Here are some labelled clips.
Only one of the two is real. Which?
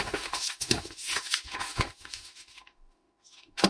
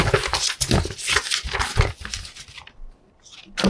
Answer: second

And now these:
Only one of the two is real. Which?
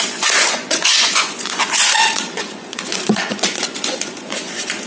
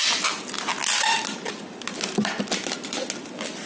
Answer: second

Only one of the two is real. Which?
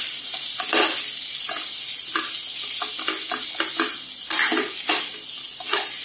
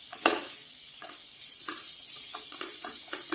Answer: first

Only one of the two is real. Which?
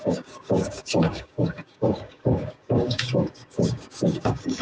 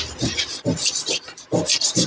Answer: second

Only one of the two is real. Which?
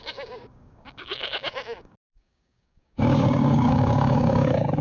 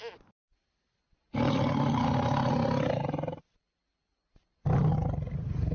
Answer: second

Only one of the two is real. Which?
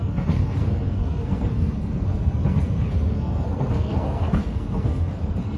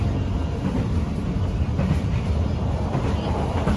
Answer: second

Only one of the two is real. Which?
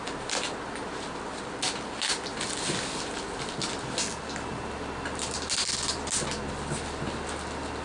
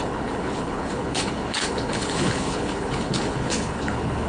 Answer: first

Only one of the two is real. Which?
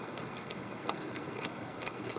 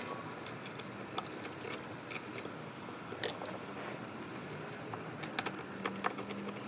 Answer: second